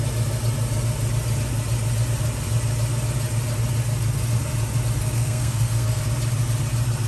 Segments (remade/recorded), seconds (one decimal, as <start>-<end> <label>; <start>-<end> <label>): 0.0-5.0 recorded; 5.0-6.0 remade; 6.0-7.1 recorded